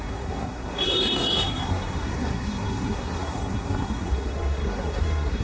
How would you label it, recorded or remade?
remade